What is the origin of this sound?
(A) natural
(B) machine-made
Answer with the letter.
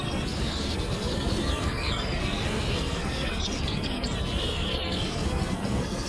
B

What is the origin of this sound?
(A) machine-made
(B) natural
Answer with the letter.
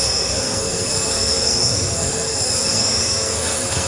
A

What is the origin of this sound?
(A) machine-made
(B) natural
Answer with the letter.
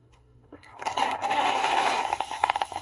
A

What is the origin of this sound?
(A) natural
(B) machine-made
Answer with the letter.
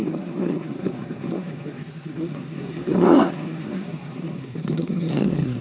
B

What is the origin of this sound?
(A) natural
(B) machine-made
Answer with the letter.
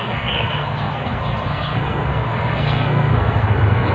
B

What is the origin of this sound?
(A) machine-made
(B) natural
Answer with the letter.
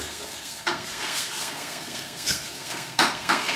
A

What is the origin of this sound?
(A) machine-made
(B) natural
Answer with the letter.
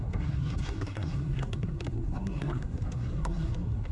A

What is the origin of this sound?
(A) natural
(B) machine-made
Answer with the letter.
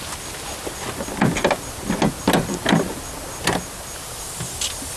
A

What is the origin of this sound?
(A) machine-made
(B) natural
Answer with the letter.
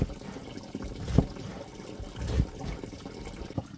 B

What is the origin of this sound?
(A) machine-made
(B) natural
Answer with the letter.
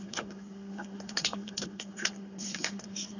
A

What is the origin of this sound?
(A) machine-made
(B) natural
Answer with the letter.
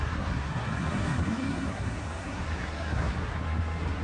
A